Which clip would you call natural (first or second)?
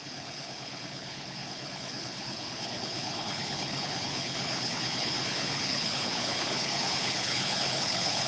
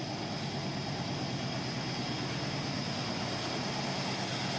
second